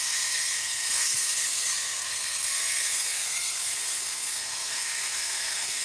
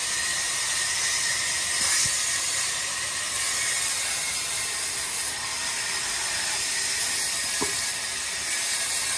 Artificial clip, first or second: first